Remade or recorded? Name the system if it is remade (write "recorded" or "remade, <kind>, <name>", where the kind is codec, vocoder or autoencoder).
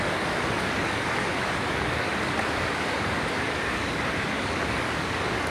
remade, codec, DAC